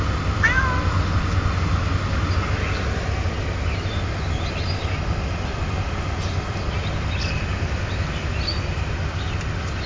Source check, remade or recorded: recorded